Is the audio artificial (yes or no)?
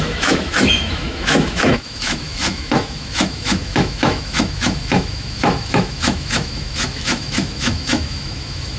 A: yes